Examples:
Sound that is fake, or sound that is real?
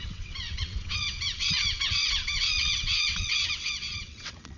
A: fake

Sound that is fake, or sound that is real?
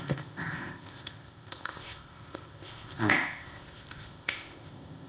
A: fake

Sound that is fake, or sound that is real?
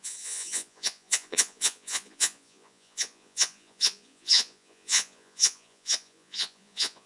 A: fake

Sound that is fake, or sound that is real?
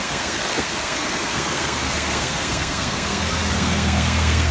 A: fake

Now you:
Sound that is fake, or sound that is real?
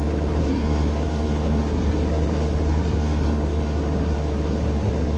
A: fake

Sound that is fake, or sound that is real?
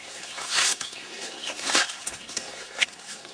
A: fake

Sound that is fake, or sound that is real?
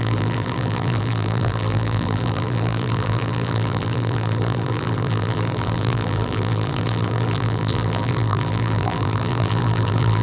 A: fake